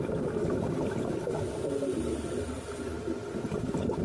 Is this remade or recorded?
recorded